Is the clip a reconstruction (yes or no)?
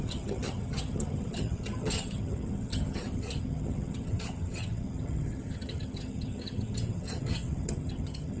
yes